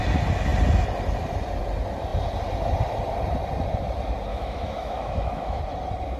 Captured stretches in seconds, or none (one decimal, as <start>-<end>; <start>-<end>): 0.0-4.3; 5.6-6.2

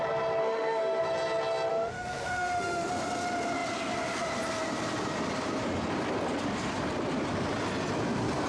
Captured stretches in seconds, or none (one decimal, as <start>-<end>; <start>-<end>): 0.0-0.4; 1.0-1.7; 2.9-8.5

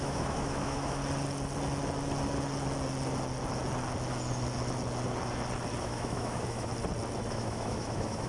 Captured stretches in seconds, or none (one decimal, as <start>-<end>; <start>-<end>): 1.0-5.8; 6.7-7.3

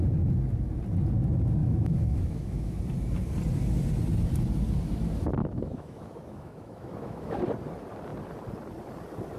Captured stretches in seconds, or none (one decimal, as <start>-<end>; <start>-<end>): 0.0-1.6; 2.8-5.4; 7.4-9.4

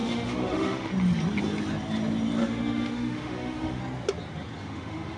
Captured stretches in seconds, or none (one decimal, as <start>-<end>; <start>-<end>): 0.9-2.4; 3.8-4.6

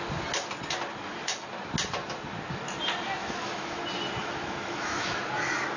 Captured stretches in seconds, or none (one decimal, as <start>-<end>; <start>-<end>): 0.0-3.2; 3.8-4.2; 5.2-5.8

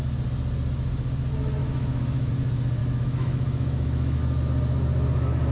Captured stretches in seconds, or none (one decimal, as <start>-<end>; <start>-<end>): 0.0-1.6; 2.3-2.8; 4.2-5.5

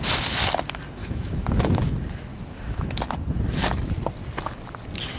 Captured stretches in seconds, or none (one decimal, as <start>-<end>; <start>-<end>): 0.0-1.0; 1.9-2.3; 3.0-5.2